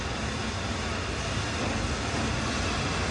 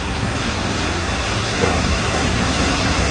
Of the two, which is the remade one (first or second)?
second